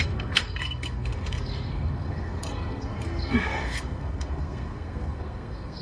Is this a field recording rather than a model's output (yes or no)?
no